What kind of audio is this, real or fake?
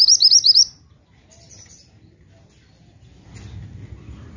real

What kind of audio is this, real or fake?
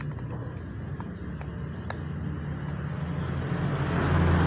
real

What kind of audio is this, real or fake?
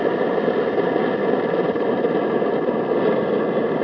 real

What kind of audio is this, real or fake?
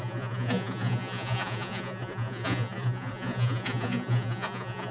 fake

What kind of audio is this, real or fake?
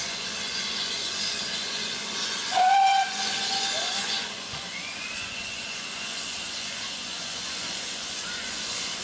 fake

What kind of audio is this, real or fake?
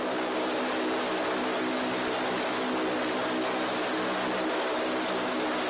real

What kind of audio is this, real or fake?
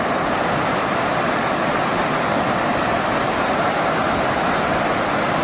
real